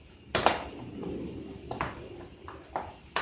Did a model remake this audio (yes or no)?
no